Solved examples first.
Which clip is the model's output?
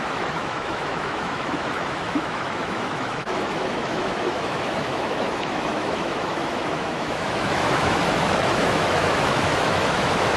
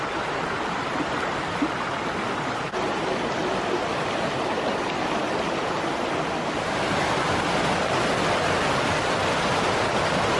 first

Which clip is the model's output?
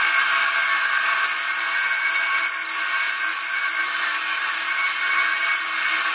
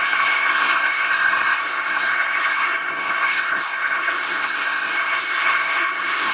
second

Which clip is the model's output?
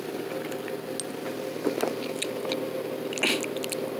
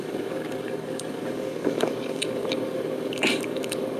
second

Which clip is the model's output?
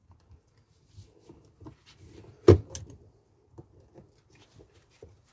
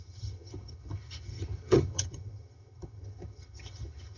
second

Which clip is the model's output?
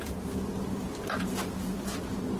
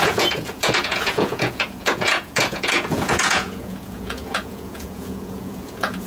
second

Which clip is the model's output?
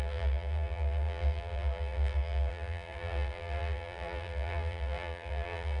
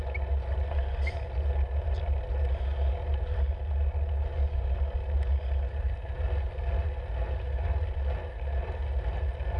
first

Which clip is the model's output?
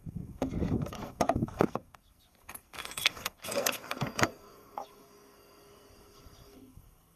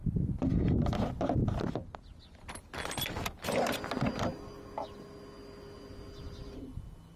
first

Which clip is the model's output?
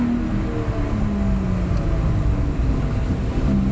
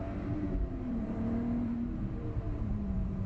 second